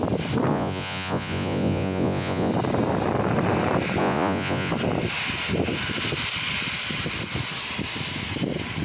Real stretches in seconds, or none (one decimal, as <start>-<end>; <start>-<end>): 0.0-0.5; 2.5-4.0; 4.7-8.8